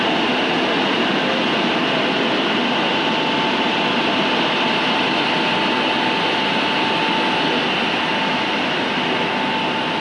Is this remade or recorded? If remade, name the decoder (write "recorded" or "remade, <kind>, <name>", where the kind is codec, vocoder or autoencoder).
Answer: recorded